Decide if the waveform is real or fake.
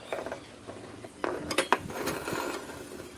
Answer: real